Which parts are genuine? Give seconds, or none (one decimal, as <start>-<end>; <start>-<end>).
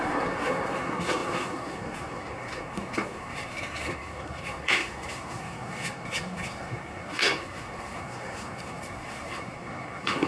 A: none